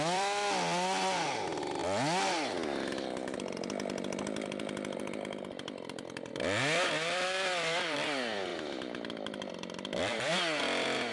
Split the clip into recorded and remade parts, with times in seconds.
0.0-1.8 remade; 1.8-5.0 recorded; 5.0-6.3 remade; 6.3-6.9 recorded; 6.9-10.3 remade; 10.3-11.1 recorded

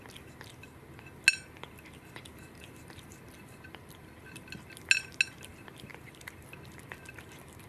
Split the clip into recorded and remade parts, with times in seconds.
0.0-2.3 recorded; 2.3-4.3 remade; 4.3-5.5 recorded; 5.5-7.7 remade

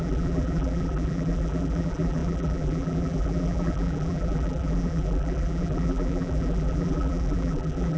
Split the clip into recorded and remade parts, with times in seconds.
0.0-8.0 remade

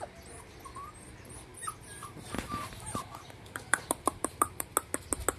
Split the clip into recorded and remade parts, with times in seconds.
0.0-1.5 recorded; 1.5-4.7 remade; 4.7-5.4 recorded

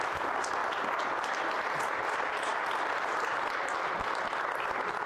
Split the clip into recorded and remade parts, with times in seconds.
0.0-0.6 recorded; 0.6-1.1 remade; 1.1-2.5 recorded; 2.5-3.7 remade; 3.7-5.1 recorded

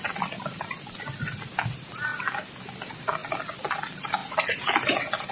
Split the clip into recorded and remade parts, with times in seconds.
0.0-2.1 remade; 2.1-2.6 recorded; 2.6-5.3 remade

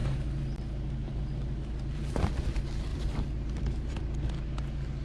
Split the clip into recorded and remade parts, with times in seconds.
0.0-2.4 remade; 2.4-2.9 recorded; 2.9-3.9 remade; 3.9-5.0 recorded

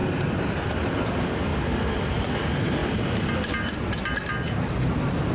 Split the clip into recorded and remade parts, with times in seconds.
0.0-0.8 recorded; 0.8-1.5 remade; 1.5-2.1 recorded; 2.1-5.3 remade